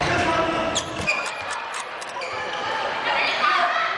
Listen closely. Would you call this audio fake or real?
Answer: real